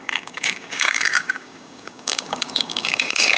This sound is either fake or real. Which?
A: fake